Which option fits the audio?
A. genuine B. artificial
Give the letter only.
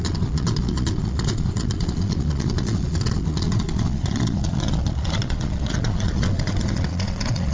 B